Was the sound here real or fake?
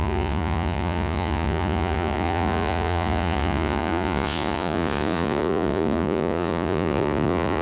fake